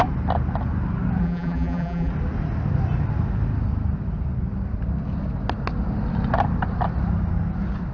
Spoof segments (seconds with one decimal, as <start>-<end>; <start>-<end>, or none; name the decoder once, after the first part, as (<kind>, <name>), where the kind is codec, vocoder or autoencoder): 1.2-2.1 (vocoder, BigVGAN v2)